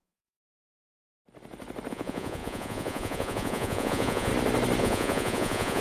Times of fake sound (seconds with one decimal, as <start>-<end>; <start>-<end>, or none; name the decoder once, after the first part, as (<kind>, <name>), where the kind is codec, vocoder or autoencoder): 0.0-0.6 (vocoder, Vocos); 1.9-4.3; 4.8-5.8